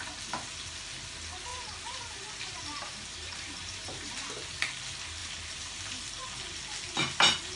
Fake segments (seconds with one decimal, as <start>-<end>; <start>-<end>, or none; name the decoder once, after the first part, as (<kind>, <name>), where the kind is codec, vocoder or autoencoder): 1.5-4.1 (vocoder, BigVGAN v2); 5.2-6.6